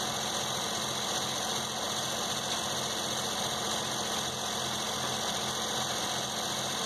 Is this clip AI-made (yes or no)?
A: no